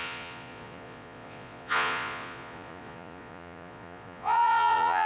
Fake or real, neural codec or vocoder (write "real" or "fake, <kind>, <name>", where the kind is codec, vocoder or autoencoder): fake, vocoder, Vocos